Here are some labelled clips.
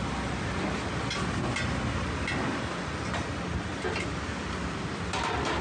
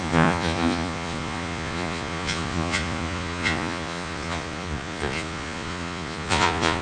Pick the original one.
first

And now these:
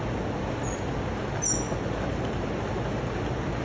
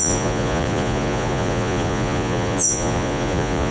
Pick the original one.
first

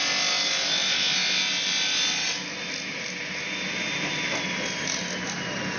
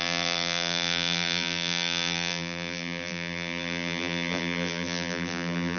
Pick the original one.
first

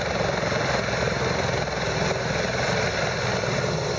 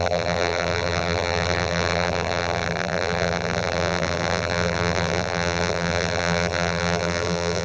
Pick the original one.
first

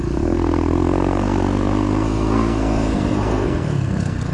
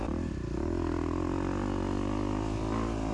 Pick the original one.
second